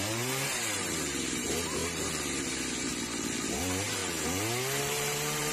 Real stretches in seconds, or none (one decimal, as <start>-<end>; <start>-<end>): 2.9-3.6; 4.0-4.8

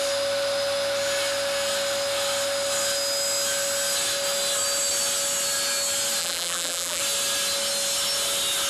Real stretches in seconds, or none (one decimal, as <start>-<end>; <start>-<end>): 0.0-6.2; 7.0-8.7

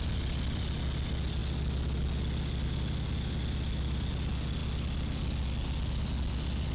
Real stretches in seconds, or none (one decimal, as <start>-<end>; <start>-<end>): 0.0-6.7